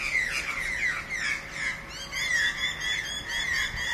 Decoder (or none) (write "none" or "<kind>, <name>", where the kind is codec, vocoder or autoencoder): none